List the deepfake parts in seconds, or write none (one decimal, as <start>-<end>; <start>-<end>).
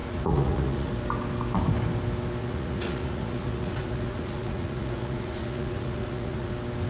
0.0-0.9; 2.4-6.5